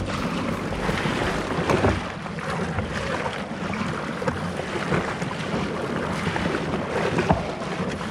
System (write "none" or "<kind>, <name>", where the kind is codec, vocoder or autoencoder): none